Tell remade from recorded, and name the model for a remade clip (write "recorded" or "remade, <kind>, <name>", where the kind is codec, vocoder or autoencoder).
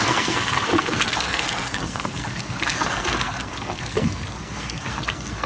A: remade, codec, SNAC